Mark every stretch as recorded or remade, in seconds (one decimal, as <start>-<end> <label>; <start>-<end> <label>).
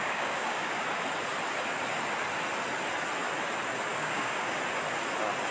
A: 0.0-0.8 remade; 0.8-3.9 recorded; 3.9-4.6 remade; 4.6-5.5 recorded